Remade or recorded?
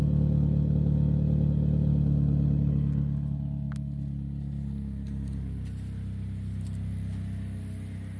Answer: recorded